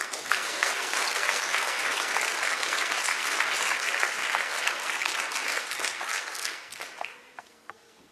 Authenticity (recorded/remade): remade